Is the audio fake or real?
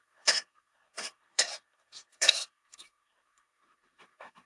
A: fake